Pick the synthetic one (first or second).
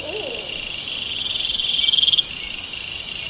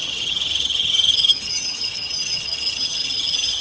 second